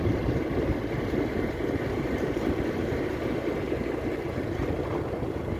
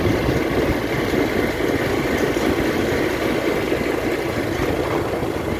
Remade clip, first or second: first